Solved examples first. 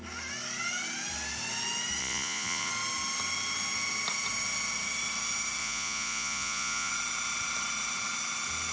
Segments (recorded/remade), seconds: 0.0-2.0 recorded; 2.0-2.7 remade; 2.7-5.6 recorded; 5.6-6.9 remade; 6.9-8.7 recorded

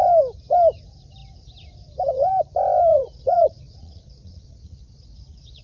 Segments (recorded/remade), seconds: 0.0-2.9 recorded; 2.9-5.6 remade

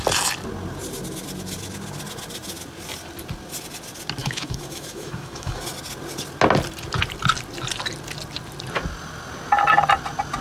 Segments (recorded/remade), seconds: 0.0-4.2 recorded; 4.2-5.6 remade; 5.6-10.4 recorded

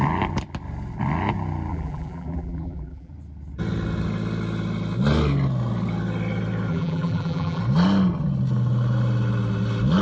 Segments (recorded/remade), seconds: 0.0-1.7 recorded; 1.7-3.1 remade; 3.1-6.7 recorded; 6.7-7.6 remade; 7.6-10.0 recorded

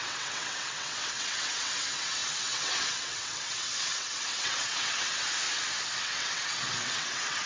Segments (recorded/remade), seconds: 0.0-5.3 remade; 5.3-6.0 recorded; 6.0-7.5 remade